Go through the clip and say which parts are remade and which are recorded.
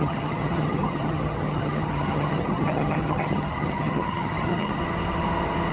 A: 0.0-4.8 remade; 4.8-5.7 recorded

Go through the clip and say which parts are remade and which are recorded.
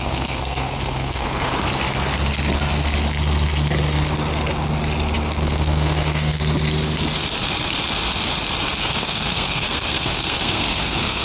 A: 0.0-1.5 remade; 1.5-5.4 recorded; 5.4-6.4 remade; 6.4-8.8 recorded; 8.8-11.2 remade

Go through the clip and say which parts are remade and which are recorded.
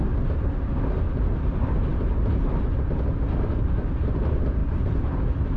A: 0.0-5.6 recorded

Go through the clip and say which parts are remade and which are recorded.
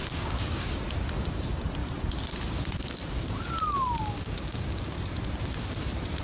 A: 0.0-0.9 remade; 0.9-4.0 recorded; 4.0-5.0 remade; 5.0-6.2 recorded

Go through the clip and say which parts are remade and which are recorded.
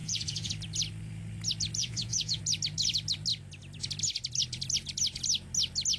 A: 0.0-0.5 remade; 0.5-1.8 recorded; 1.8-2.4 remade; 2.4-6.0 recorded